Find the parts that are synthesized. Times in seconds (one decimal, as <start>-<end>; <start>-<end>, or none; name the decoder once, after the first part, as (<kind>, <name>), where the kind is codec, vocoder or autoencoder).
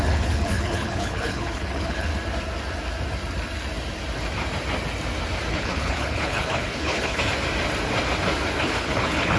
0.0-2.1 (codec, HILCodec); 5.5-7.2; 8.6-9.4